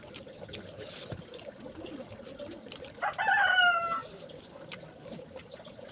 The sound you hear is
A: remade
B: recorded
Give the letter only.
B